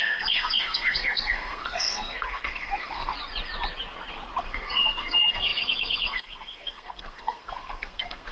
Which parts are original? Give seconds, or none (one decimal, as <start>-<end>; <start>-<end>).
3.1-4.4